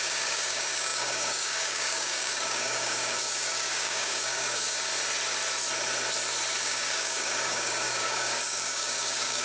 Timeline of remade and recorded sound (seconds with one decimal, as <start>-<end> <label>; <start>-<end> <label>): 0.0-4.9 remade; 4.9-6.6 recorded; 6.6-9.4 remade